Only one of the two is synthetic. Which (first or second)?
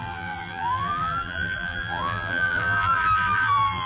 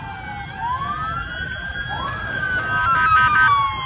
first